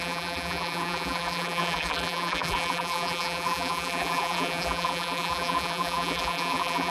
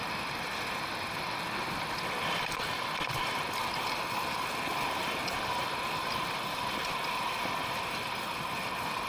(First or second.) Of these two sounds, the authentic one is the second